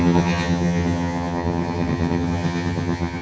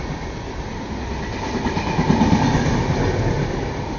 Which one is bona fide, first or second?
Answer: second